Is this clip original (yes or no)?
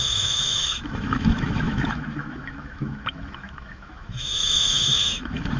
no